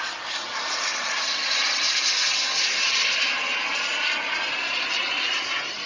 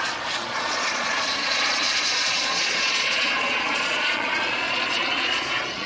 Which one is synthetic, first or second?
second